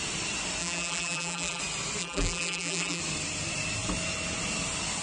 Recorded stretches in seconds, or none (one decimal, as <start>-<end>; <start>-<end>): 0.0-0.6; 1.6-2.0; 3.0-5.0